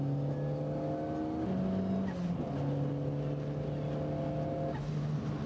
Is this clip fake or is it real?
real